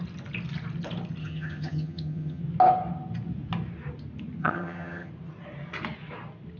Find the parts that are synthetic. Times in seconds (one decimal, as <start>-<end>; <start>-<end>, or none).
1.2-2.4; 4.4-5.1